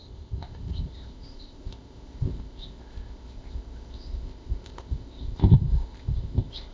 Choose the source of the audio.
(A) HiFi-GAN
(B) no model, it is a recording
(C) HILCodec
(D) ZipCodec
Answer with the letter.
D